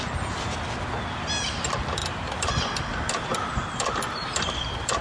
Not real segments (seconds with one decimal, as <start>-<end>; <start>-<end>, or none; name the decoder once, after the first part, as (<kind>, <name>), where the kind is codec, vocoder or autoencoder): 2.0-2.5 (vocoder, BigVGAN v2)